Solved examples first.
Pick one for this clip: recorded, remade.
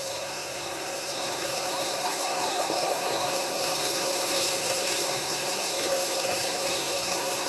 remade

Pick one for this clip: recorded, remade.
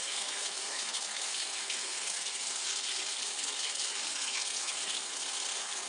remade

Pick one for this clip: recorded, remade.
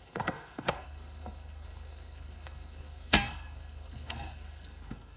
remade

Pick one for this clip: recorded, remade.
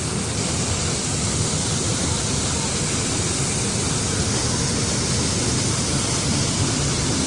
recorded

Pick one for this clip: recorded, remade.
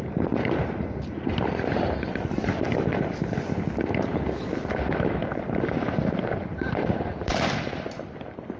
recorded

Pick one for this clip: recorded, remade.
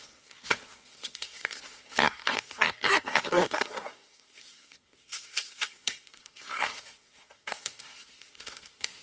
remade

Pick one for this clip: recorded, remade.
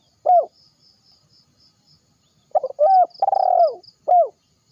recorded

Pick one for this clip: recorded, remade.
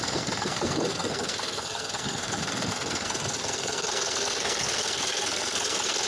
remade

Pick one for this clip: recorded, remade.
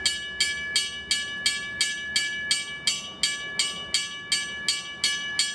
recorded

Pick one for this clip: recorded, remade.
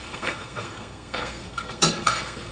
remade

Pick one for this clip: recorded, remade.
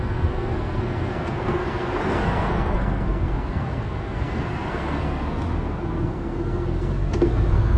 remade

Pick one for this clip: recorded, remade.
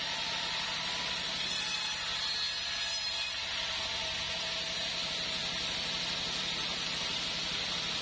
recorded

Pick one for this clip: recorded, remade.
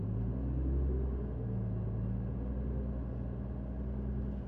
recorded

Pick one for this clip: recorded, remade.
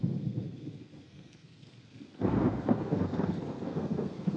remade